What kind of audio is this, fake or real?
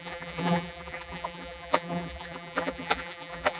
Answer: fake